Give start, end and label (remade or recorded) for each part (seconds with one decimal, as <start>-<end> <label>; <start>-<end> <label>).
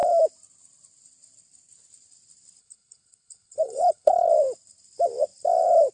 0.0-2.6 recorded; 2.6-4.3 remade; 4.3-5.9 recorded